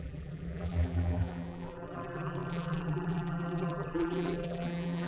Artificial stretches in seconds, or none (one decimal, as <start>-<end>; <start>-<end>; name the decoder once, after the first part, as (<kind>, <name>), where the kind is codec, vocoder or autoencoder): 0.0-5.1 (vocoder, BigVGAN v2)